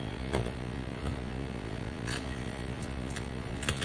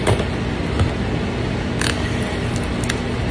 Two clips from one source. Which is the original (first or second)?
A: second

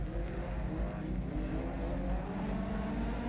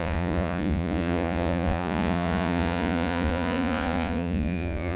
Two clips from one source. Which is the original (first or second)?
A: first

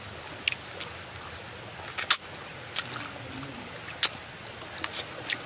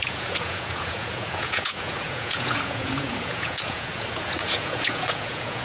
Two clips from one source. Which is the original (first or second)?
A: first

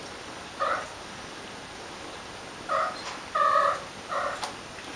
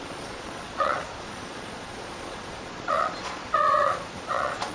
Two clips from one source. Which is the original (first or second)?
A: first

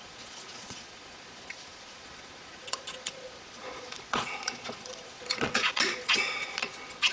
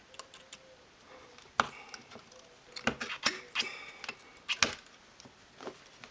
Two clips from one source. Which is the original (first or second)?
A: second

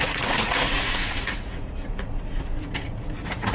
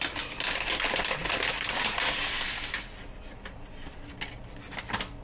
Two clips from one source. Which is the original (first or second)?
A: second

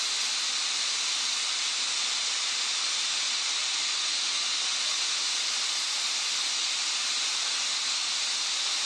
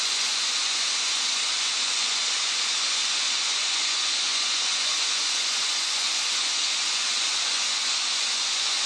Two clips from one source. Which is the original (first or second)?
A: first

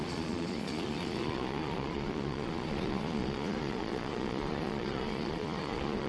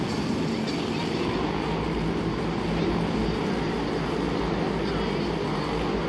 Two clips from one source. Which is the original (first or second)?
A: second